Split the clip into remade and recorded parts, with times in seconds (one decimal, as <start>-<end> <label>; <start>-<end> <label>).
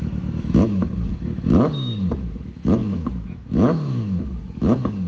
0.0-5.1 remade